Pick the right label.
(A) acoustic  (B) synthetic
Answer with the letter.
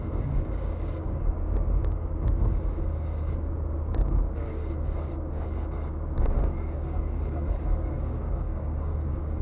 B